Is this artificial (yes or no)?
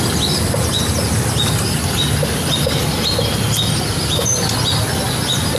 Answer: no